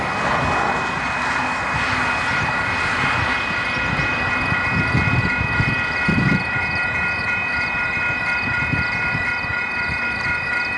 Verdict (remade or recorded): recorded